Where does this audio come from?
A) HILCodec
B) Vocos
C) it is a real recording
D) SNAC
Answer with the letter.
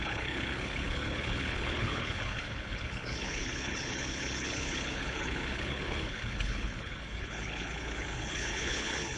A